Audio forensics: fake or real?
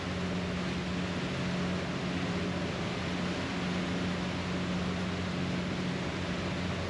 real